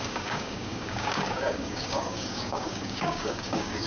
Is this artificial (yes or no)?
yes